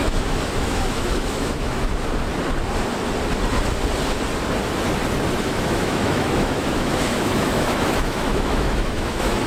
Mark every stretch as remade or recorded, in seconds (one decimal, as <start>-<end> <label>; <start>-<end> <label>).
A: 0.0-1.9 remade; 1.9-5.4 recorded; 5.4-9.5 remade